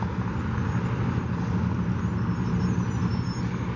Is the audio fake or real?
real